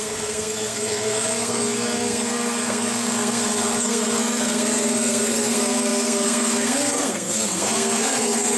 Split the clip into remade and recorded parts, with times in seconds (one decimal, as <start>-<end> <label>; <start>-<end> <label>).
0.0-8.6 remade

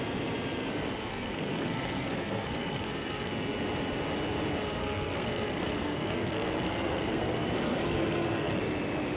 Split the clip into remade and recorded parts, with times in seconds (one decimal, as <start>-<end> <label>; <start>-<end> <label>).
0.0-1.1 recorded; 1.1-3.3 remade; 3.3-4.8 recorded; 4.8-8.6 remade; 8.6-9.2 recorded

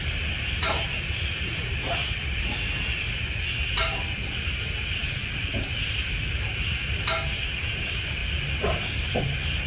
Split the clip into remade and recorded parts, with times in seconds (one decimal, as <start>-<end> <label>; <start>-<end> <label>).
0.0-9.7 recorded